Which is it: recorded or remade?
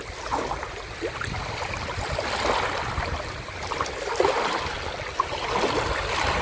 recorded